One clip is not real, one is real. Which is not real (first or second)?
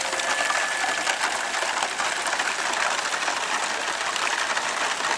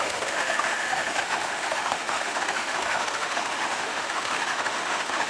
second